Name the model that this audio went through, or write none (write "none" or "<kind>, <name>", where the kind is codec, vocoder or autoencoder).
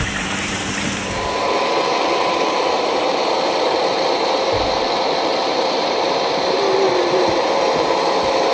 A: vocoder, BigVGAN v2